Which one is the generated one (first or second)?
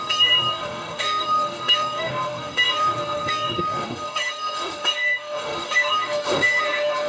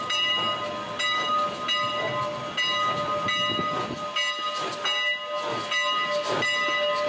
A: first